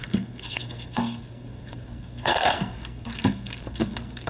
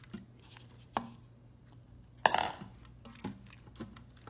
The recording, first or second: second